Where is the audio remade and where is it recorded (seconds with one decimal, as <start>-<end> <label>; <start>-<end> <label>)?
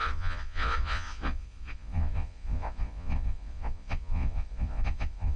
0.0-5.4 remade